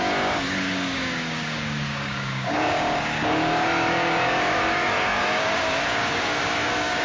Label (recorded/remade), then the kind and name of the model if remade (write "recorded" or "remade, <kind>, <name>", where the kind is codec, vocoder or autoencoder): remade, codec, DAC